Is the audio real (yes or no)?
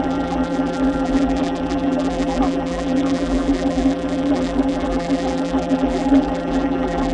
no